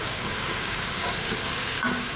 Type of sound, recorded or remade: remade